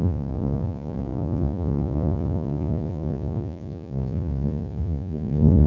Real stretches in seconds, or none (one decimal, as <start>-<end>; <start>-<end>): none